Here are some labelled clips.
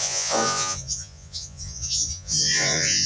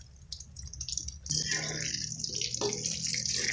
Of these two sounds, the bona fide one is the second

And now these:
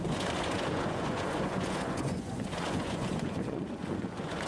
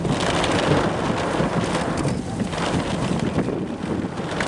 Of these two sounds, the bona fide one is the second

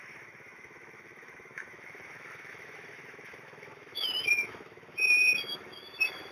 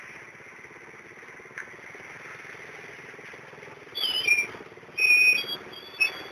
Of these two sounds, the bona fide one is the second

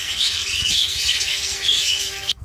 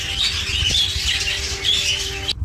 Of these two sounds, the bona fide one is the second